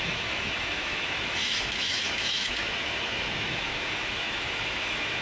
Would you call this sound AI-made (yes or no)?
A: yes